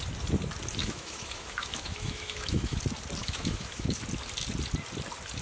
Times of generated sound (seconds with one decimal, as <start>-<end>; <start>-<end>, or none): 0.8-2.8; 3.2-4.0